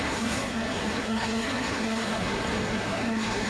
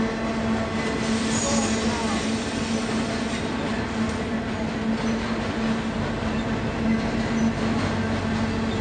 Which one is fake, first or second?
first